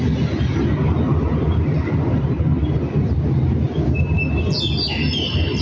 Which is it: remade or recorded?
recorded